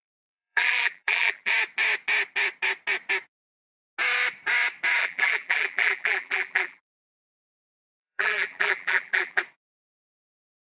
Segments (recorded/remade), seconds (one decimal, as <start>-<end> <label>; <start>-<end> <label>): 0.0-1.5 remade; 1.5-5.0 recorded; 5.0-9.4 remade; 9.4-10.7 recorded